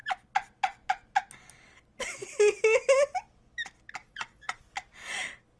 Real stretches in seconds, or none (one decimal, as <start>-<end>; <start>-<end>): 0.0-4.0; 4.6-5.6